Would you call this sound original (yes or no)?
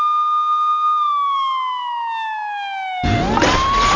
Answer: yes